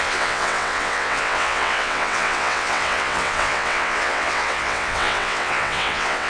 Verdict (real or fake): fake